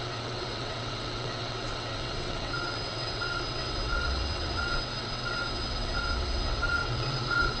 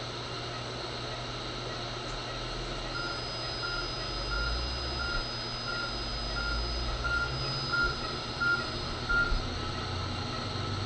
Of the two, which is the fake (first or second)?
first